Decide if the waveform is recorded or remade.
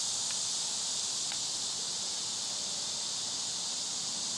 recorded